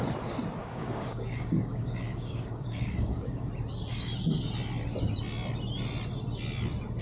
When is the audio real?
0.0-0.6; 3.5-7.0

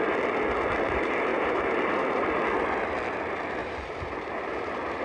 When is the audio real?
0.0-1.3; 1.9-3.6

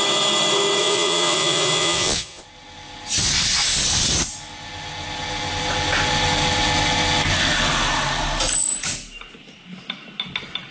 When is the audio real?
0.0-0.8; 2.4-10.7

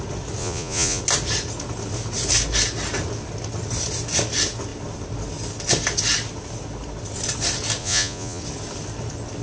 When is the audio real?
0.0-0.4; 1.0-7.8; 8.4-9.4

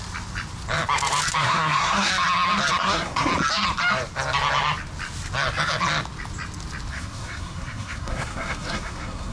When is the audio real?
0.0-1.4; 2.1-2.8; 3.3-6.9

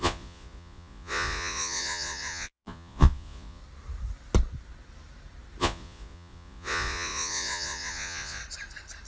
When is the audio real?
3.6-5.6; 8.4-9.1

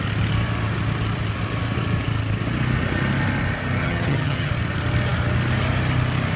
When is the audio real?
0.0-3.8; 4.5-6.4

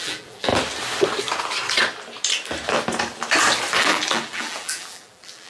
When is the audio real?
0.5-3.8